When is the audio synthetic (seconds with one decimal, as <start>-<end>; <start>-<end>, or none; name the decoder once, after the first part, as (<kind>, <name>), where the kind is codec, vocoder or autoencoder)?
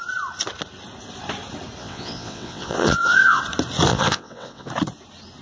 1.8-3.4 (vocoder, WaveNeXt); 3.9-4.7